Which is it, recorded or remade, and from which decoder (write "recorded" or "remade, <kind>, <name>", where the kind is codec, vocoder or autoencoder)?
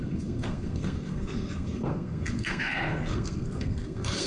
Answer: remade, codec, SNAC